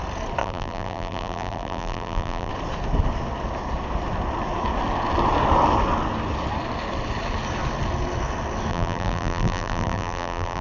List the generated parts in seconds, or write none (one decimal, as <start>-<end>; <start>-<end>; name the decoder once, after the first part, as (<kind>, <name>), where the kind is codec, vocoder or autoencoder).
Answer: 0.4-2.5 (vocoder, BigVGAN v2); 8.7-10.6